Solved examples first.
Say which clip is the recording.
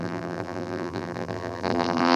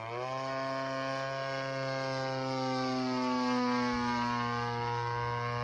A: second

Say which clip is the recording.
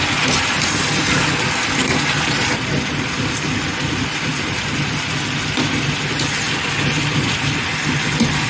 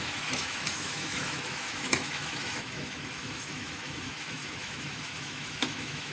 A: first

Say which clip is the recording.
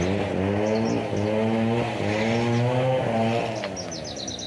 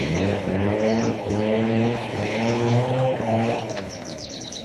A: first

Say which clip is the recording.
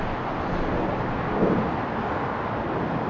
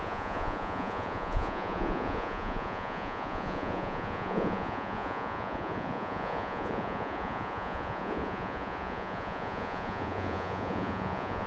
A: first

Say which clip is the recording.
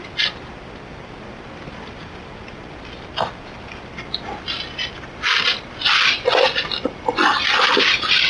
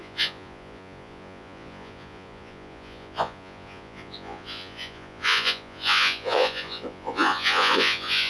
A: first